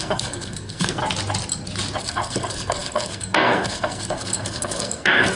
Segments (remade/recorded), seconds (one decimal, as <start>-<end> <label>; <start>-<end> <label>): 0.0-1.0 remade; 1.0-2.0 recorded; 2.0-5.4 remade